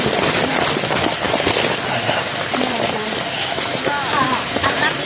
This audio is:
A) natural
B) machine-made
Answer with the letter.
A